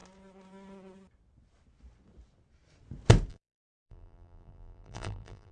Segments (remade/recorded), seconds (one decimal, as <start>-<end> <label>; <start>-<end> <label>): 0.0-3.3 recorded; 3.3-5.5 remade